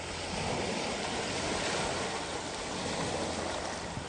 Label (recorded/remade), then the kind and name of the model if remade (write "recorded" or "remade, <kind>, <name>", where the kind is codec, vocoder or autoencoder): recorded